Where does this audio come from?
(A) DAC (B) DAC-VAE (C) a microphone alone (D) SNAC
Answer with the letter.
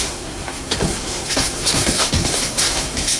D